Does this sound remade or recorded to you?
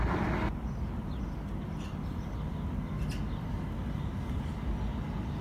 recorded